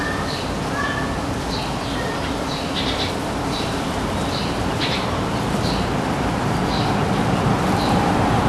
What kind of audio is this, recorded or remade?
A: recorded